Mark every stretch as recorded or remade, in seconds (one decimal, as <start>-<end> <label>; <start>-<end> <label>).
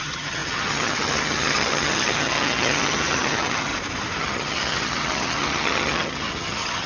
0.0-3.7 remade; 3.7-4.2 recorded; 4.2-6.9 remade